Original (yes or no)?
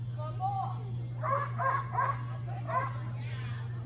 yes